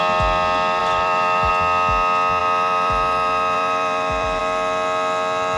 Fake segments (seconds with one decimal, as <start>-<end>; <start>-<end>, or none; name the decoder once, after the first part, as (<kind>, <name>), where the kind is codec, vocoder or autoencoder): 0.8-1.5 (vocoder, BigVGAN v2); 2.4-4.4